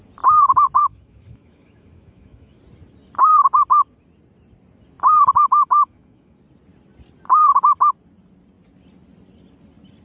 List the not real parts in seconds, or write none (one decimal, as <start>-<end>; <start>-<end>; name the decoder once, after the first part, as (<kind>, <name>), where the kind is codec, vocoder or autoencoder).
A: 0.8-2.6 (autoencoder, DAC-VAE); 5.4-6.4